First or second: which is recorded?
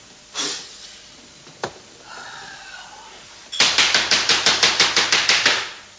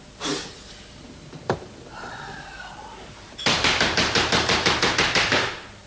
first